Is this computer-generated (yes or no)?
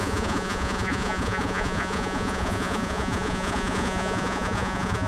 yes